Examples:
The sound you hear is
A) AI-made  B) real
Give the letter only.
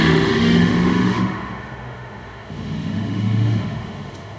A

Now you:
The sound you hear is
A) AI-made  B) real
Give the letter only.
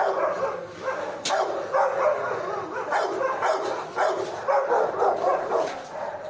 B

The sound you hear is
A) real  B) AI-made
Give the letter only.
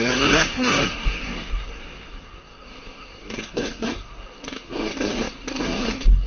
B